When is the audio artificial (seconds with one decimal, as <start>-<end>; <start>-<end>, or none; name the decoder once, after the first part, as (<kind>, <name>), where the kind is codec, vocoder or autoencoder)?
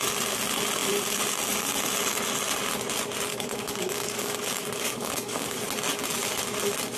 3.3-5.6 (codec, DAC)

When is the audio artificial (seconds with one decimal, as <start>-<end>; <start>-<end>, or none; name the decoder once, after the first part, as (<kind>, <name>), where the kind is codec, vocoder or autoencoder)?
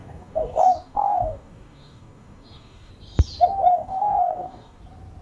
0.0-2.9 (codec, DAC); 3.7-4.8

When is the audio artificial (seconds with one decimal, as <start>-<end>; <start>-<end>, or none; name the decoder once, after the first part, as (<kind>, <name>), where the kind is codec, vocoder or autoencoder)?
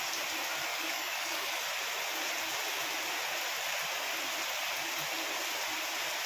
0.7-1.6 (codec, DAC)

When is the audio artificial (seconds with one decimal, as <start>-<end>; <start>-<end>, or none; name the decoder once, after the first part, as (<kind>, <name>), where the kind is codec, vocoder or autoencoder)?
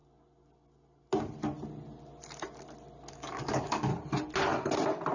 3.1-3.9 (codec, DAC)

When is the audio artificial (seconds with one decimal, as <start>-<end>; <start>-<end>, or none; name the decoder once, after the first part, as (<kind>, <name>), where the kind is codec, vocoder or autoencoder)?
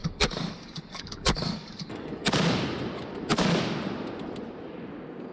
0.0-2.3 (codec, DAC)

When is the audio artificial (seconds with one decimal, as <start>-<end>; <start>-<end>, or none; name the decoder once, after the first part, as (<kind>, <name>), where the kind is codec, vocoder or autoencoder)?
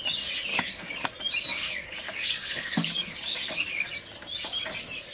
0.5-1.1 (codec, DAC); 1.5-3.9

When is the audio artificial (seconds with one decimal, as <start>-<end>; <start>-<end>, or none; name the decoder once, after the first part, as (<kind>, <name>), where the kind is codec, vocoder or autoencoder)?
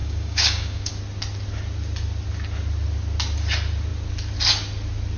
0.0-0.9 (codec, DAC)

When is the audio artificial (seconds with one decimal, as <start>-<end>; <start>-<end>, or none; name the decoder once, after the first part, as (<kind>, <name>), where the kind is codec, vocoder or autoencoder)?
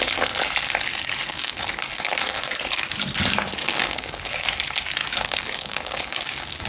1.2-2.5 (codec, DAC); 3.6-4.4; 5.0-6.7